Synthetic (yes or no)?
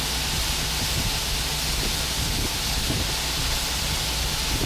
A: no